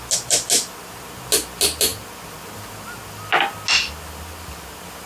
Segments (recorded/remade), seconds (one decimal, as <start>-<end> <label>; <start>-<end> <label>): 0.0-5.1 recorded

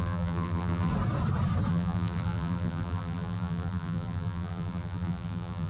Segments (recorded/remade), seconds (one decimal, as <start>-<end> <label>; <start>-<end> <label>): 0.0-0.9 remade; 0.9-1.7 recorded; 1.7-5.7 remade

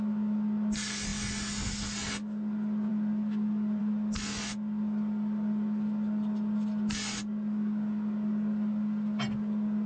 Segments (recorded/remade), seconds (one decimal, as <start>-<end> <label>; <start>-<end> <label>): 0.0-9.9 recorded

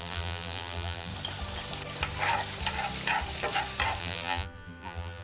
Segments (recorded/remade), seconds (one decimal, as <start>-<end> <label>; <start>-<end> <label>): 0.0-1.1 remade; 1.1-4.0 recorded; 4.0-5.2 remade

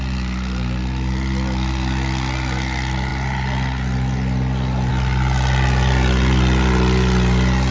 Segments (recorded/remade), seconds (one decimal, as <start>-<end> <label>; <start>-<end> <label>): 0.0-7.7 recorded

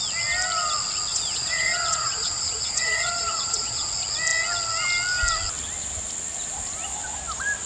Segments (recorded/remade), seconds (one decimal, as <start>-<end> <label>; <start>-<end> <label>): 0.0-1.1 recorded; 1.1-3.9 remade; 3.9-7.7 recorded

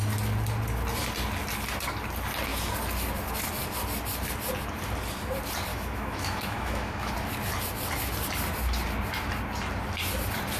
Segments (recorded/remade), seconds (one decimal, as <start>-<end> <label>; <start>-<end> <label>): 0.0-5.7 recorded; 5.7-7.1 remade; 7.1-10.6 recorded